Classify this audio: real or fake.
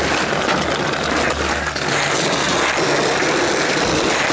real